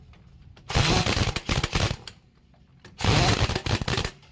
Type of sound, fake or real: real